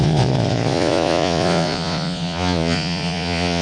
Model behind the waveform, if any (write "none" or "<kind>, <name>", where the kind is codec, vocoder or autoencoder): vocoder, Vocos